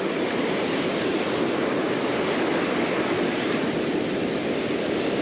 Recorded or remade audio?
recorded